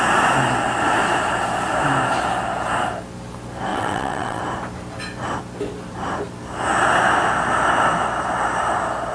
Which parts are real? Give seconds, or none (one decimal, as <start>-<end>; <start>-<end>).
0.0-3.7; 4.4-9.1